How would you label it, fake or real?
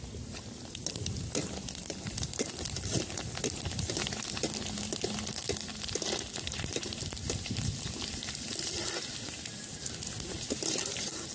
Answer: real